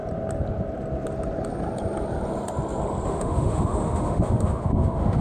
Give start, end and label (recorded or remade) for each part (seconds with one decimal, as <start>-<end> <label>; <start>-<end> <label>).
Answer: 0.0-3.1 recorded; 3.1-5.2 remade